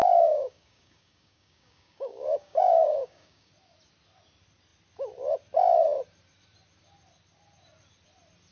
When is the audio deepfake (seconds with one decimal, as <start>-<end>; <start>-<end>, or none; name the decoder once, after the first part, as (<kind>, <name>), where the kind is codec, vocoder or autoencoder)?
0.0-3.5 (codec, DAC)